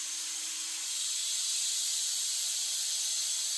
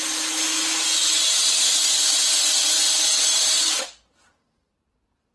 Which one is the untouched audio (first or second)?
second